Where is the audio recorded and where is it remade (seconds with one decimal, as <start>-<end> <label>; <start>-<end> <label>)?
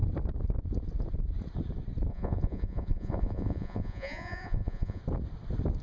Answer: 0.0-2.1 recorded; 2.1-5.0 remade; 5.0-5.8 recorded